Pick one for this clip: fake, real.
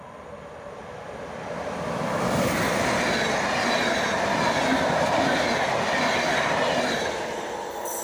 real